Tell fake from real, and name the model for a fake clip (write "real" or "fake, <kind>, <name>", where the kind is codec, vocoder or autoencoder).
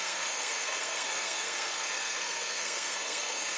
fake, codec, SNAC